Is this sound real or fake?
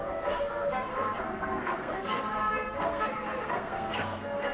fake